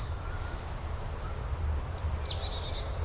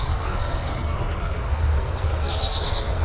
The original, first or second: first